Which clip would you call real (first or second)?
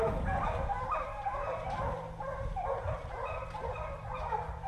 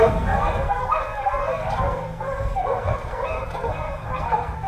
first